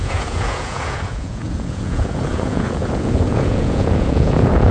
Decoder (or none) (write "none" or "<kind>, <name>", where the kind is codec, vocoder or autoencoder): vocoder, Vocos